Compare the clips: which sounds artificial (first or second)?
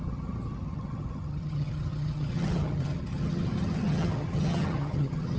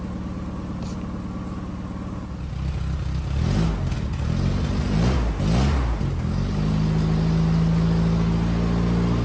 first